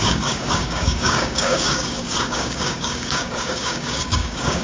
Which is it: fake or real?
fake